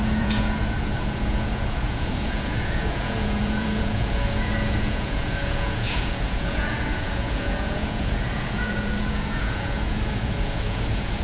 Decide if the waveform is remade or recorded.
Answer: remade